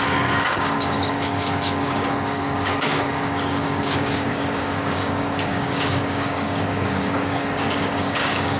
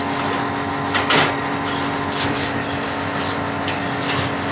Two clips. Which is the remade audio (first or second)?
first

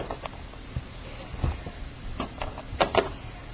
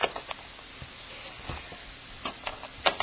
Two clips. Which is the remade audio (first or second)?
first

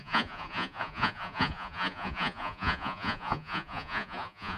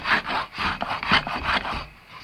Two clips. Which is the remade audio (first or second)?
first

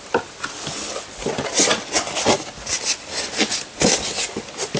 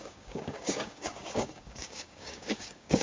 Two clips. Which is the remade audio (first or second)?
second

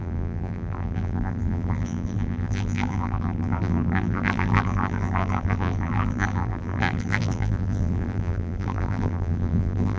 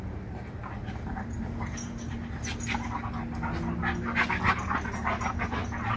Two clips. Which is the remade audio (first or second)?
first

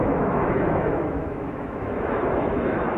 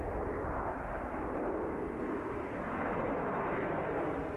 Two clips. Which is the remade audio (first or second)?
first